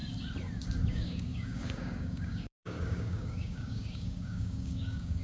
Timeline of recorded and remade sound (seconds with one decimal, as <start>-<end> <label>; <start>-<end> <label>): 0.0-0.9 recorded; 0.9-5.2 remade